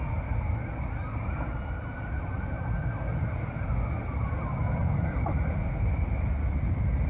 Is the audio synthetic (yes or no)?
no